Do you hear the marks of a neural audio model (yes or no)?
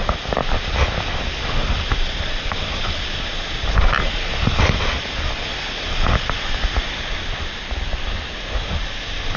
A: no